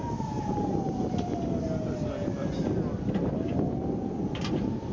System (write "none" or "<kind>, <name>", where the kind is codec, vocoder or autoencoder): none